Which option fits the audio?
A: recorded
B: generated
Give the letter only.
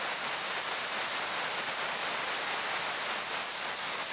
A